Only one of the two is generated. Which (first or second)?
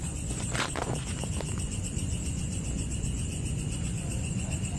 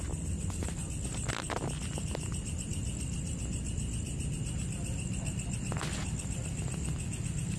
first